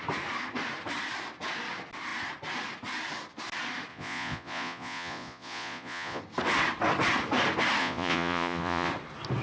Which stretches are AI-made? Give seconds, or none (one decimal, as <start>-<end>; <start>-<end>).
3.9-6.2; 7.8-8.9